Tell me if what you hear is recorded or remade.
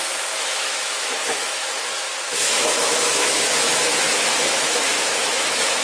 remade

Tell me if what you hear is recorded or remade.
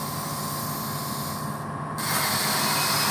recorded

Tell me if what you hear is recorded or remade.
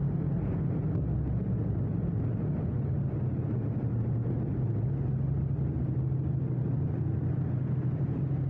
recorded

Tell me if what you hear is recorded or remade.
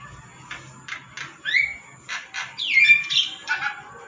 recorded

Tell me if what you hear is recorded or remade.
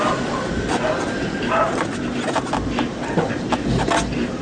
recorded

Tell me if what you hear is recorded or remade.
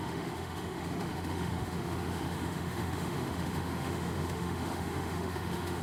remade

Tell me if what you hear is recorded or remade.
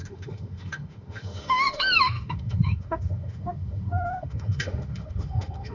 remade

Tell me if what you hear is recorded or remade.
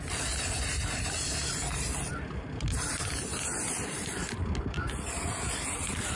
recorded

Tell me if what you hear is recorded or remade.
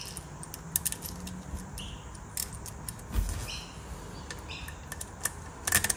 recorded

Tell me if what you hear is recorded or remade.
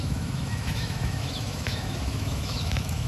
remade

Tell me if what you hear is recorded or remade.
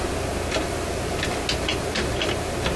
recorded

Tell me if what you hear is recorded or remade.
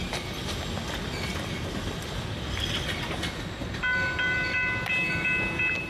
recorded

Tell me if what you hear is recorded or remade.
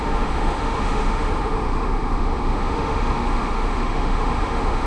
remade